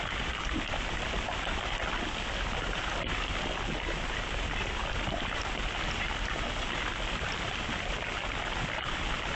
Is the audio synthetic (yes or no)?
no